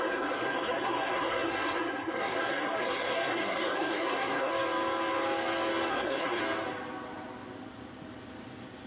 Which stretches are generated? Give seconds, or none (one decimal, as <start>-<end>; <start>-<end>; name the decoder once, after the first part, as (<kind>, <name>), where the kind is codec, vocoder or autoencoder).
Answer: 0.0-4.5 (codec, SNAC); 5.9-6.4